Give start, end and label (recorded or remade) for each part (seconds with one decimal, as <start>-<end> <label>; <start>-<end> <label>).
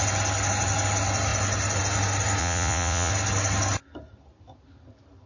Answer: 0.0-2.4 recorded; 2.4-3.1 remade; 3.1-5.3 recorded